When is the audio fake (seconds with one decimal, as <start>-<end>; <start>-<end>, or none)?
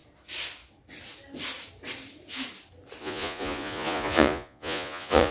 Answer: 3.0-5.3